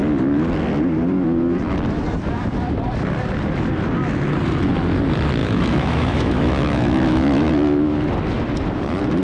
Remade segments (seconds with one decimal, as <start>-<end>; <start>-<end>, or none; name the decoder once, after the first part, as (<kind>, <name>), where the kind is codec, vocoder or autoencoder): 5.4-7.5 (autoencoder, DAC-VAE)